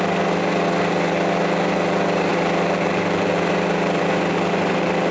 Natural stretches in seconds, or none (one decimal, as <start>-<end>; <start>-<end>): 0.0-5.1